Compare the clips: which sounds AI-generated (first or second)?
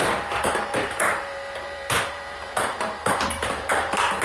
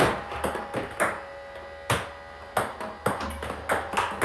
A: first